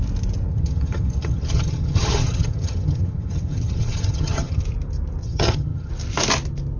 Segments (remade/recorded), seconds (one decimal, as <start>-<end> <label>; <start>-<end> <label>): 0.0-0.5 recorded; 0.5-4.6 remade; 4.6-5.2 recorded; 5.2-5.9 remade; 5.9-6.8 recorded

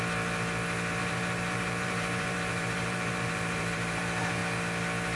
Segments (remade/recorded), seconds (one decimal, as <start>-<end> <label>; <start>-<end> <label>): 0.0-1.0 recorded; 1.0-4.0 remade; 4.0-5.2 recorded

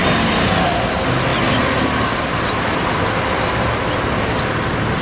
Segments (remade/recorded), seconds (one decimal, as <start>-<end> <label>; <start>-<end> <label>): 0.0-5.0 recorded

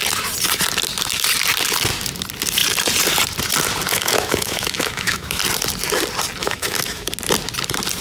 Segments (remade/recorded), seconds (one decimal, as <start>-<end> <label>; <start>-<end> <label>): 0.0-3.9 recorded; 3.9-5.4 remade; 5.4-6.4 recorded; 6.4-7.1 remade; 7.1-8.0 recorded

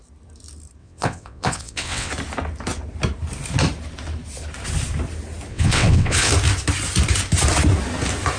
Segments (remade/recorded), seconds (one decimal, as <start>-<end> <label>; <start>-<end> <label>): 0.0-0.8 recorded; 0.8-2.1 remade; 2.1-5.5 recorded; 5.5-6.3 remade; 6.3-8.4 recorded

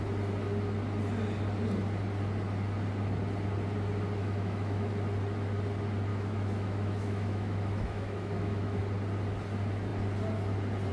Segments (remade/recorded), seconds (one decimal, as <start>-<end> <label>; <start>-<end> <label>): 0.0-4.2 recorded; 4.2-4.9 remade; 4.9-6.1 recorded; 6.1-8.8 remade; 8.8-10.9 recorded